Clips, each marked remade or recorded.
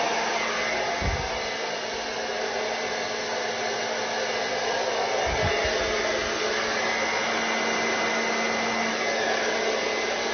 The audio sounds recorded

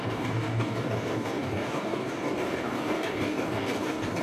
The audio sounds remade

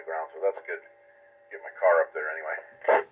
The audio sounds recorded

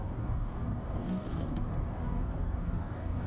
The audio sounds remade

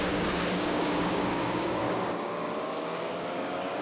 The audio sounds remade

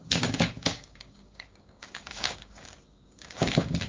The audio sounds remade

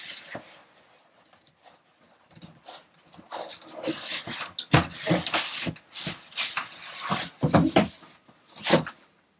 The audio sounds recorded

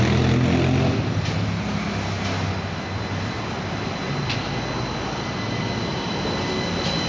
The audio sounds recorded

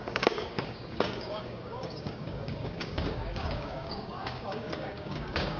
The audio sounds remade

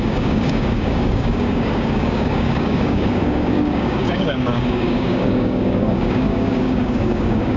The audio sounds remade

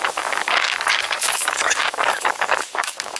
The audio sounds remade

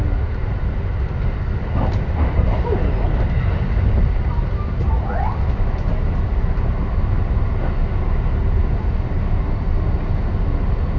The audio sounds recorded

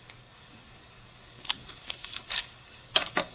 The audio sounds remade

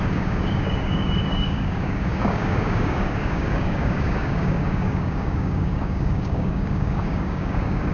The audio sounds remade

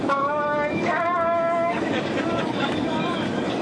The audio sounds remade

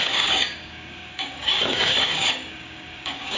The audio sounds remade